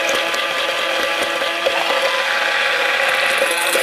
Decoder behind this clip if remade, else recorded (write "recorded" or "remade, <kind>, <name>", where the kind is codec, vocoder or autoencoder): recorded